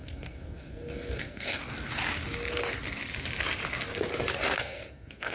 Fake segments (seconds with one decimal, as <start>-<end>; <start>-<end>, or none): 0.0-1.6; 4.6-5.3